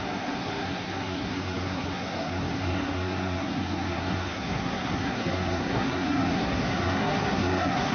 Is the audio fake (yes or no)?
yes